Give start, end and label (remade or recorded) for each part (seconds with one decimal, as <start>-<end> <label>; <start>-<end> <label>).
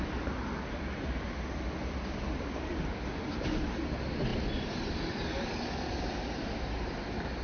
0.0-4.3 recorded; 4.3-5.6 remade; 5.6-7.4 recorded